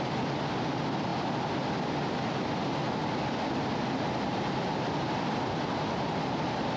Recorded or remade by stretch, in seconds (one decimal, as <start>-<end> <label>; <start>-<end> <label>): 0.0-6.8 recorded